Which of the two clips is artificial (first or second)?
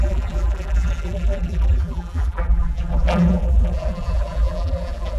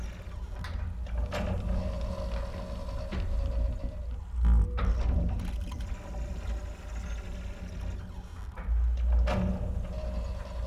first